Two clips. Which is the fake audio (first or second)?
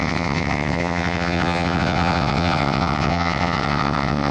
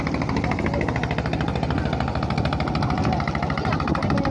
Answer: first